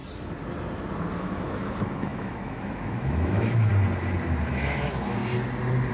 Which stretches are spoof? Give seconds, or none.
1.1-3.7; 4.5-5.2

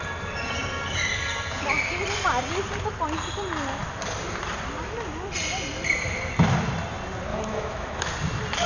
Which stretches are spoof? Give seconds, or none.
7.3-8.1

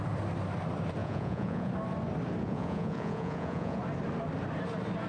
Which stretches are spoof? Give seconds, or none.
1.0-1.7; 2.4-3.8

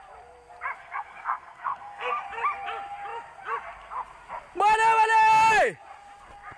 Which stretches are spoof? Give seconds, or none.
0.8-2.2

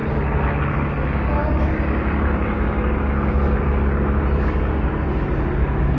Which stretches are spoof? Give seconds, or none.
none

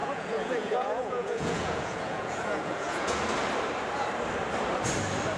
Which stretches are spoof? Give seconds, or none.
0.0-3.2

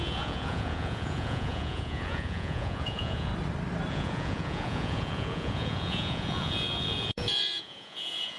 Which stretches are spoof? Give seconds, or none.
0.0-3.3; 3.9-8.4